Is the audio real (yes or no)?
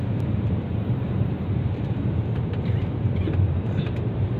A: no